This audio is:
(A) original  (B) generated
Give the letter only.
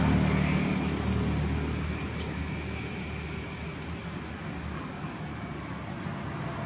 A